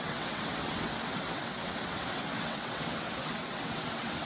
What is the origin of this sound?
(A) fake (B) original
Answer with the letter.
A